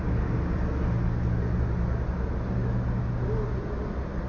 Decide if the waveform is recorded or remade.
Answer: recorded